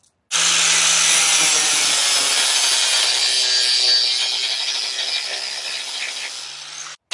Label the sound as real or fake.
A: real